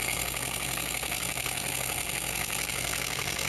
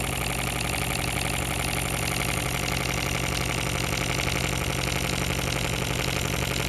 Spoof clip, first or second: first